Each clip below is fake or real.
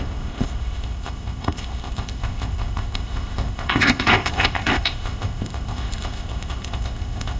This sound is fake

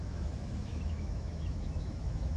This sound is fake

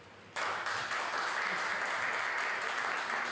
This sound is real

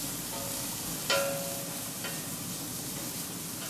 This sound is real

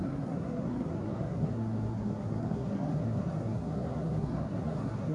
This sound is fake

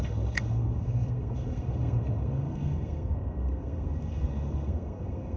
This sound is fake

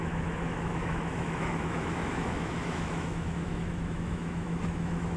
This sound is fake